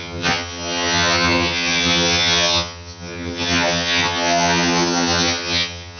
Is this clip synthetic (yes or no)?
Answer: yes